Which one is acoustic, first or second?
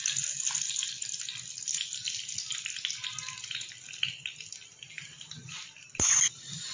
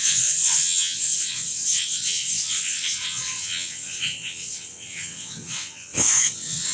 first